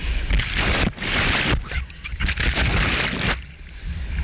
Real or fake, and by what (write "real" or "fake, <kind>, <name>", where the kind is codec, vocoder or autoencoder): real